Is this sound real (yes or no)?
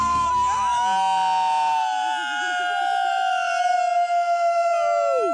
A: yes